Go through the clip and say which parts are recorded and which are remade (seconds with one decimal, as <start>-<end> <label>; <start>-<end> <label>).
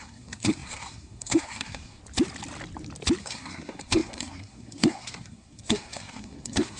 0.0-2.0 remade; 2.0-3.2 recorded; 3.2-6.8 remade